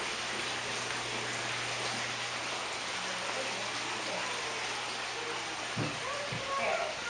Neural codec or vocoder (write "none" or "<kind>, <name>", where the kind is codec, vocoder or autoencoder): none